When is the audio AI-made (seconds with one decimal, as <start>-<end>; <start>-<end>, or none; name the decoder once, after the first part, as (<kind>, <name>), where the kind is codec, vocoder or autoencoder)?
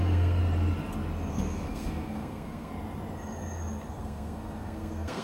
0.0-0.4 (codec, SNAC); 1.3-2.7; 3.9-5.2